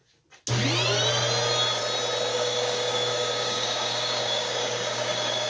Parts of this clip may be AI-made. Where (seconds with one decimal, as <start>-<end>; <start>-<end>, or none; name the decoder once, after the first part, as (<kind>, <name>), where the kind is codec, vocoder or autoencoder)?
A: 2.3-5.5 (codec, DAC)